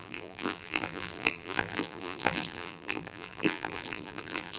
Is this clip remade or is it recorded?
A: remade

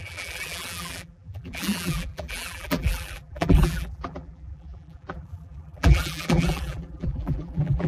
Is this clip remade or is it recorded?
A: remade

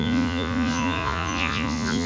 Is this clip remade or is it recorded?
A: remade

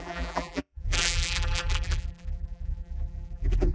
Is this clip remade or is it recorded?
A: remade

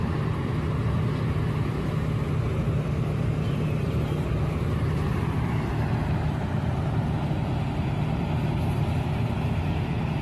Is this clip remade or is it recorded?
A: remade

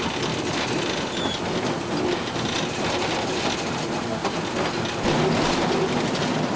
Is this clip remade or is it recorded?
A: recorded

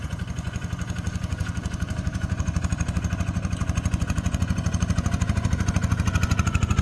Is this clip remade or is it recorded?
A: remade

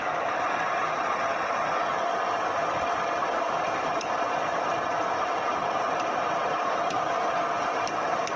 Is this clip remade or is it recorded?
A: recorded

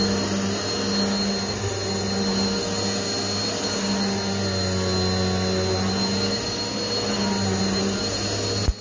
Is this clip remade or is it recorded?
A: recorded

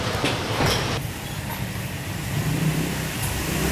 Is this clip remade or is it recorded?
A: remade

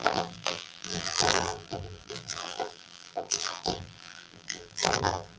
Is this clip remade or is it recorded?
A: remade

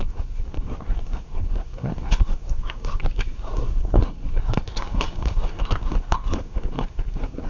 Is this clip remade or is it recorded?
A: remade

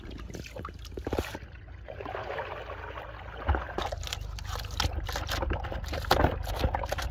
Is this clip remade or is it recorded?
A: recorded